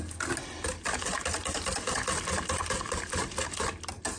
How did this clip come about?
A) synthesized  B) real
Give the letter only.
B